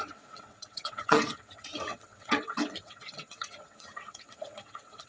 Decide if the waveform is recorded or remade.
remade